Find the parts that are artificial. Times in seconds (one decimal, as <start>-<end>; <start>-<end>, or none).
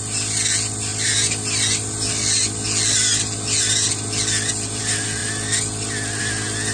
none